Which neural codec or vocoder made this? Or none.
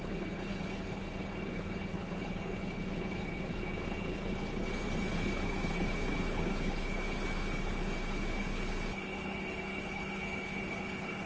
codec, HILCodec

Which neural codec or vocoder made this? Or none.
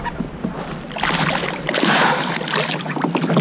none